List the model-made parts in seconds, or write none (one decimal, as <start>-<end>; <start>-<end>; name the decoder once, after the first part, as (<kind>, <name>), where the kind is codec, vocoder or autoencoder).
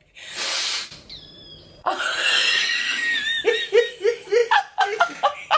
1.8-3.0 (vocoder, Vocos); 4.4-5.0